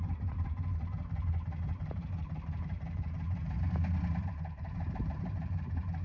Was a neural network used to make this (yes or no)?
yes